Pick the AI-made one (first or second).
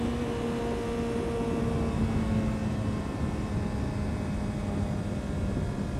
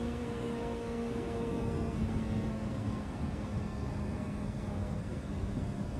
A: second